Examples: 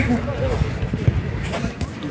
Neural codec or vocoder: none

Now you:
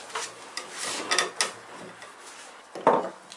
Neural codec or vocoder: none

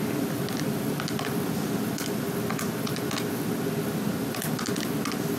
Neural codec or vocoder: none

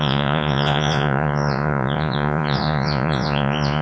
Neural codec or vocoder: vocoder, Vocos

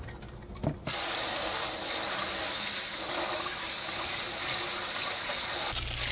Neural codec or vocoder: none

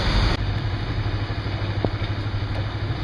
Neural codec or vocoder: none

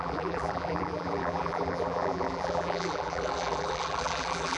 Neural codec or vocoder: vocoder, BigVGAN v2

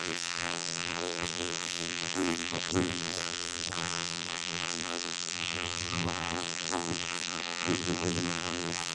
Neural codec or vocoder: vocoder, BigVGAN v2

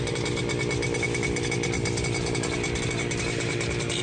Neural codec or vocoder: none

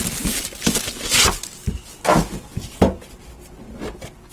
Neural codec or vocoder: none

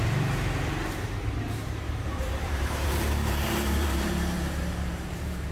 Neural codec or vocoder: vocoder, BigVGAN v2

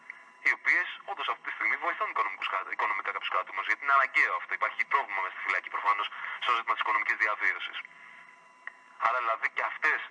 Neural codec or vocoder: none